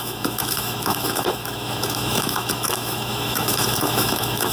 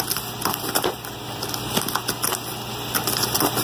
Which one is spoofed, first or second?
first